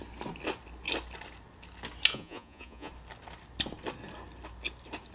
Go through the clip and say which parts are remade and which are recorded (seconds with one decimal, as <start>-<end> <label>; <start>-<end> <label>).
0.0-2.1 recorded; 2.1-2.9 remade; 2.9-5.1 recorded